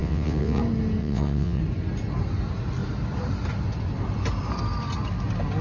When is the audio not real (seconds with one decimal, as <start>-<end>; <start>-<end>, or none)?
0.0-0.6; 1.0-1.6